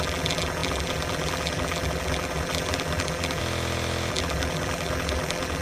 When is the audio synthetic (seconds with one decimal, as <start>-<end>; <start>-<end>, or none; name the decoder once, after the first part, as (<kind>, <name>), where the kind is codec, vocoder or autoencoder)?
0.0-3.4 (vocoder, BigVGAN v2); 4.1-5.6